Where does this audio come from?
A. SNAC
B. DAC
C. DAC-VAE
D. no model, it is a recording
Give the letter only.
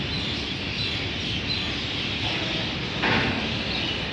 D